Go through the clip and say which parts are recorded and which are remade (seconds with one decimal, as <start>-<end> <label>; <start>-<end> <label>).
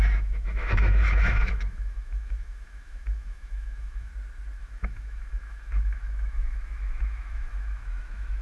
0.0-4.1 remade; 4.1-4.6 recorded; 4.6-8.4 remade